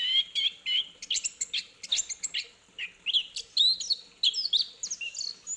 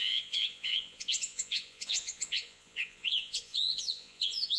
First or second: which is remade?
second